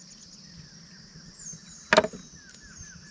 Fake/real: real